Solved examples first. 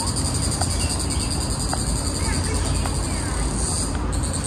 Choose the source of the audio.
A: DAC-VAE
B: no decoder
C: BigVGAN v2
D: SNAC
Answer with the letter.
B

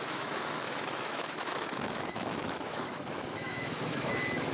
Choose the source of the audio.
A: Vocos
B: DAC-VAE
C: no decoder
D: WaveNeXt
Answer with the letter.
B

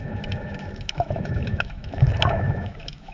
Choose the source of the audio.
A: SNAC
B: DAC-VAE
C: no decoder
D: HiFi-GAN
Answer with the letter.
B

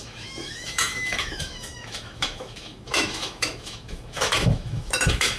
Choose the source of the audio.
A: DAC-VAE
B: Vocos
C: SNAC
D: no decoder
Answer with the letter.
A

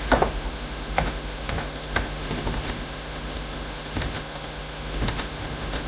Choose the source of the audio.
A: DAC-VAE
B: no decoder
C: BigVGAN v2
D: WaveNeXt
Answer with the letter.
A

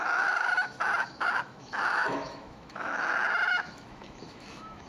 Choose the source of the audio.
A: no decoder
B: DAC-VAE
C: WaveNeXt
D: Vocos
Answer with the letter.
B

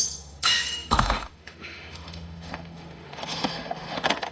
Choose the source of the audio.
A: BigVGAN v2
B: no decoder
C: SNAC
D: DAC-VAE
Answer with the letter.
D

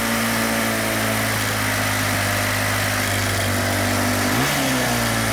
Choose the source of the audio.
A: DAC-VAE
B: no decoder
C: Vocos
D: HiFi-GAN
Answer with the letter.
B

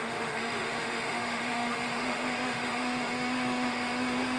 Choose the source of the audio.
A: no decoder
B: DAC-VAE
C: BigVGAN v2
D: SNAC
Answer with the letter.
B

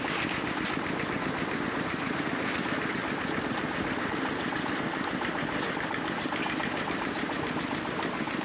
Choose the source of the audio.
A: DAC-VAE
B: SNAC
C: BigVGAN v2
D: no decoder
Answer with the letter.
D